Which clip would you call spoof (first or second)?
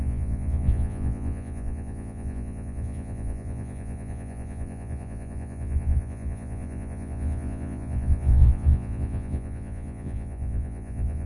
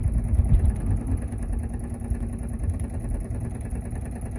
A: first